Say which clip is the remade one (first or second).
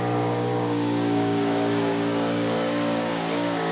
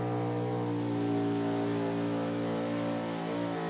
first